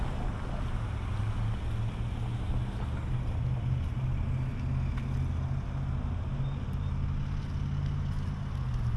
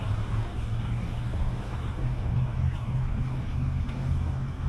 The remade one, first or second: second